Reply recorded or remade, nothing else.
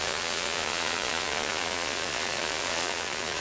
remade